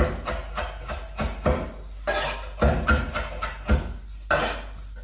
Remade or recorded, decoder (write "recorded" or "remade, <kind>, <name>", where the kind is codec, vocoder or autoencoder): recorded